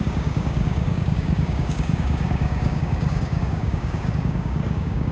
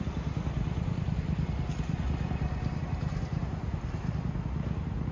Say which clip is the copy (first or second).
first